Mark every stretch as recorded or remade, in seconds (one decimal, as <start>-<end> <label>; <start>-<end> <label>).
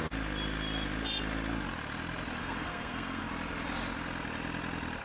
0.0-2.4 recorded; 2.4-3.2 remade; 3.2-5.0 recorded